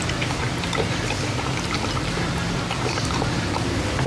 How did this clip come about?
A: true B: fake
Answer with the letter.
A